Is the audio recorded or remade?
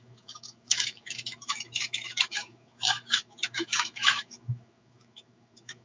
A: remade